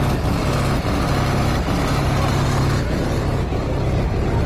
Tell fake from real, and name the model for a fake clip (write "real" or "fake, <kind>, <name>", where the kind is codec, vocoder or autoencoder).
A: real